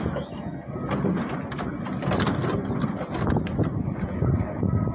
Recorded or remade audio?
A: recorded